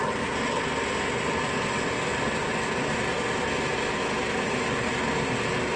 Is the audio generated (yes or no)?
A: no